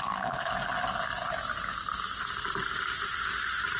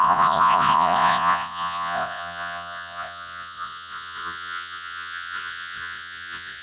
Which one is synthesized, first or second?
second